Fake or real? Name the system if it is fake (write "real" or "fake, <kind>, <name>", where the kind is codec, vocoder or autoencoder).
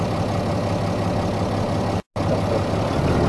real